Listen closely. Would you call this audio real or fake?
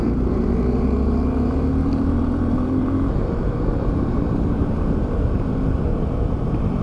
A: fake